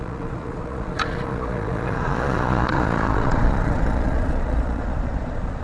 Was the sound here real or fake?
fake